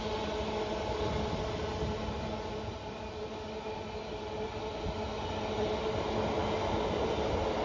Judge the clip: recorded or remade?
recorded